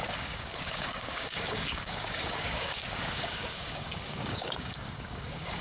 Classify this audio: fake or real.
fake